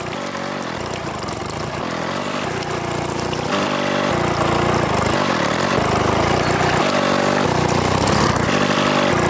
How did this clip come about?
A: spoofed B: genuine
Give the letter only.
B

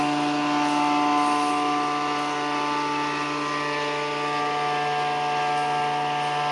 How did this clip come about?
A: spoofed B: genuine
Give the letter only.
B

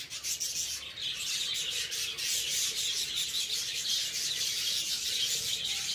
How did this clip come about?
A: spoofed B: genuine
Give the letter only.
B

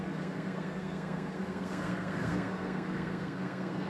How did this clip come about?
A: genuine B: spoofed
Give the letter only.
B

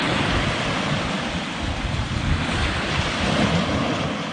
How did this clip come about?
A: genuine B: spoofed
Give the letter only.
A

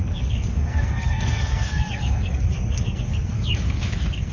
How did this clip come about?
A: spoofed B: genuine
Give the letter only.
A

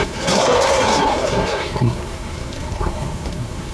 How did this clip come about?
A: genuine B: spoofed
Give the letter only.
B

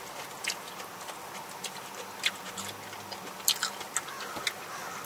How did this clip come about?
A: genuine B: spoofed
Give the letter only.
A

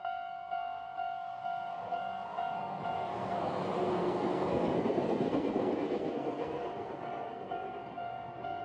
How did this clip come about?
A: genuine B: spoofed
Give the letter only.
B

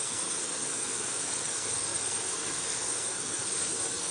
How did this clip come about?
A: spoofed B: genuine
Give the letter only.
A